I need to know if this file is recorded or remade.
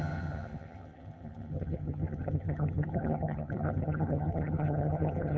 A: remade